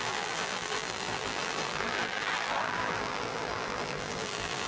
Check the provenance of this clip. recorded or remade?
remade